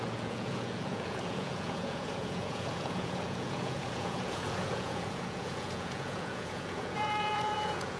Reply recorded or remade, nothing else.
remade